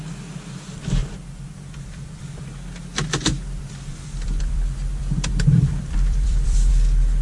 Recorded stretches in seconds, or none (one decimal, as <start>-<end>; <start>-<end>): 0.0-1.0; 2.2-3.3; 6.7-7.2